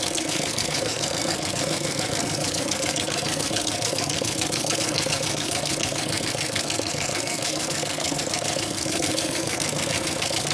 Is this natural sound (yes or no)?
no